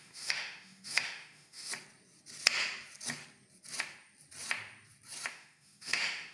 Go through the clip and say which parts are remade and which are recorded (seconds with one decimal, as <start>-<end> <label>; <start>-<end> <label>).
0.0-1.7 remade; 1.7-5.3 recorded; 5.3-6.3 remade